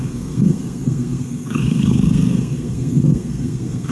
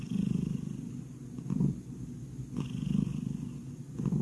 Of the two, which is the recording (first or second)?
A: second